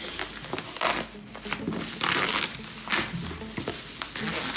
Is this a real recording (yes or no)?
yes